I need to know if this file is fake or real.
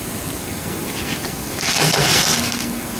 fake